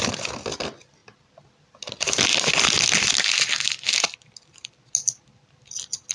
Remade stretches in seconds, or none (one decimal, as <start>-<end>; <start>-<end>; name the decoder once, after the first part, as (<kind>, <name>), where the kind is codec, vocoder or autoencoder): none